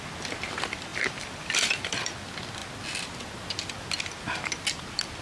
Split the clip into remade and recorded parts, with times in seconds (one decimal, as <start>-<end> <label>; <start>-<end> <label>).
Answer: 0.0-0.9 recorded; 0.9-2.1 remade; 2.1-5.2 recorded